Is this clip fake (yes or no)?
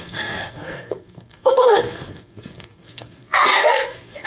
yes